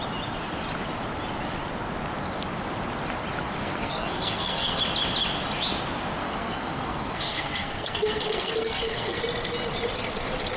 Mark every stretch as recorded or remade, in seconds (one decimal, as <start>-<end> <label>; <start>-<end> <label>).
0.0-3.6 recorded; 3.6-4.8 remade; 4.8-6.2 recorded; 6.2-9.2 remade; 9.2-10.6 recorded